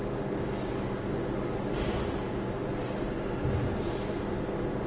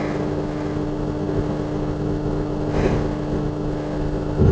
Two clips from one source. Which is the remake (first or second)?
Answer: second